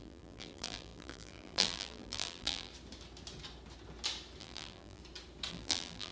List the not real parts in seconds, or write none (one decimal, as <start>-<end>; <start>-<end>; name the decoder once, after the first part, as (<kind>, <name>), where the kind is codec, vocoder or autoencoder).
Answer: 0.0-2.7 (vocoder, BigVGAN v2); 4.4-5.0; 5.5-6.1